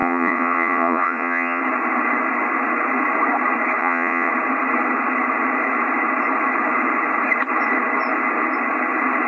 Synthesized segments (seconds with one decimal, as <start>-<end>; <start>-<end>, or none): 0.0-1.6; 3.8-4.3